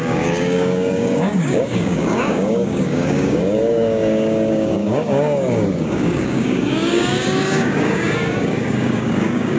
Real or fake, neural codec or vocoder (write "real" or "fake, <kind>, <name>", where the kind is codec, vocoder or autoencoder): fake, codec, DAC